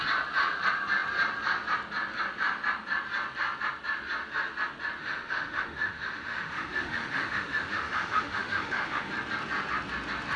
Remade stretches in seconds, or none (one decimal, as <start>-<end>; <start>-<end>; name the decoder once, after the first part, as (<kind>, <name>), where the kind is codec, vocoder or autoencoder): 5.0-9.1 (autoencoder, DAC-VAE)